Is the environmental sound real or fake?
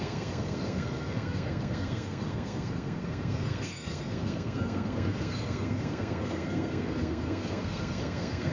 fake